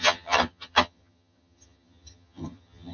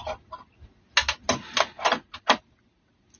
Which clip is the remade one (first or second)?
first